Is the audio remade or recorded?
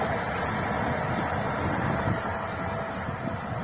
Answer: recorded